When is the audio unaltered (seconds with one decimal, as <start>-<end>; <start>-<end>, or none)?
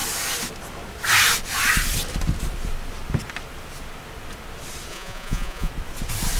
0.0-4.9; 5.7-6.4